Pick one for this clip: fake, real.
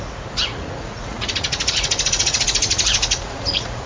fake